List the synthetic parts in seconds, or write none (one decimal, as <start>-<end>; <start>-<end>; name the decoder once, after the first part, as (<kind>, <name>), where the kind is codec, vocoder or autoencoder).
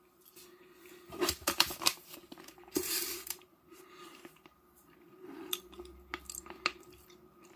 1.2-5.8 (vocoder, BigVGAN v2)